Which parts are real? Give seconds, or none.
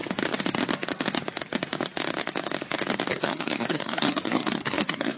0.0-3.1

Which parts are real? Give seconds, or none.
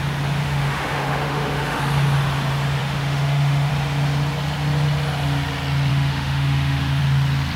0.0-0.4; 1.8-2.8; 3.7-5.9; 7.0-7.6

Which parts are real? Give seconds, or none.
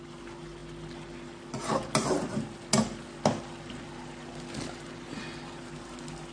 0.0-6.3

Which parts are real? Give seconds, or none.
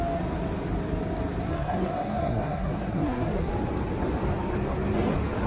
0.0-1.5; 3.5-5.5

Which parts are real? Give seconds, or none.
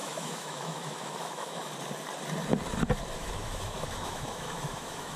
1.7-3.2